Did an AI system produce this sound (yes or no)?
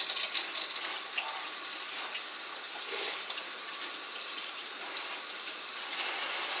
no